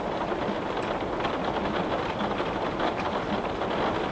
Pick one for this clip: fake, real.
real